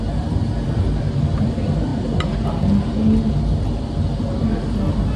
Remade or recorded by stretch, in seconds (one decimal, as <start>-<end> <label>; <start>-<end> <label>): 0.0-5.2 recorded